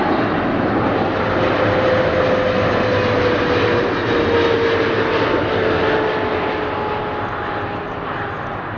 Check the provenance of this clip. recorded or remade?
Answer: recorded